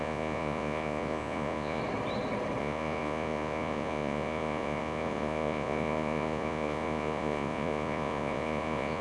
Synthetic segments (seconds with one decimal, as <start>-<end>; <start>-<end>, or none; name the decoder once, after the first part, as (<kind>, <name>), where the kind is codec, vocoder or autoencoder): 0.0-1.8 (vocoder, Vocos); 2.6-9.0